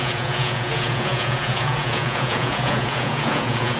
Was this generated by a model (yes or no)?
yes